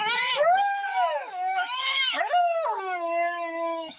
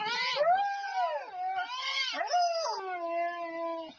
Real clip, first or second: second